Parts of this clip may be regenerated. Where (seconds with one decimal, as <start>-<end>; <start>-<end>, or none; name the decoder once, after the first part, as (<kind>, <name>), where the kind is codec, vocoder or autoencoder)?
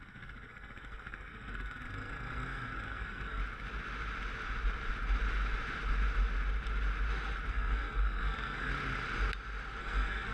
0.0-3.4 (codec, SNAC); 7.5-8.7; 9.8-10.3